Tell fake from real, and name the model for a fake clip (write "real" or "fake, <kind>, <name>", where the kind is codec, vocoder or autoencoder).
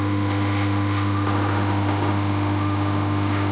fake, autoencoder, DAC-VAE